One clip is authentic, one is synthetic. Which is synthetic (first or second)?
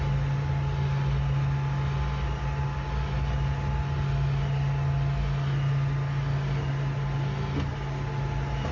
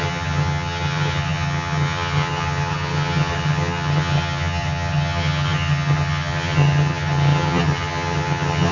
second